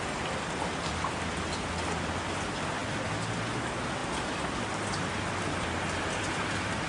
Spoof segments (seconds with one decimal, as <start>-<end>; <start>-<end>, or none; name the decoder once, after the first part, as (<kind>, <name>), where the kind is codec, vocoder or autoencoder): none